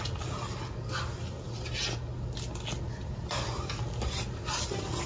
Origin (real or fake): real